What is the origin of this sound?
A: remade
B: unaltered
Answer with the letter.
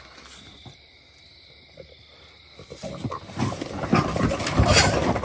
B